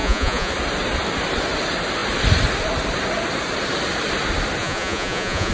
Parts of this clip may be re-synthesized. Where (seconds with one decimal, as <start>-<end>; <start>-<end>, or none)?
0.0-0.5; 4.6-5.5